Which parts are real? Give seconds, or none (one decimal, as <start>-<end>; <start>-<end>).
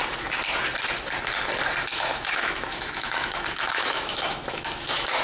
0.0-1.9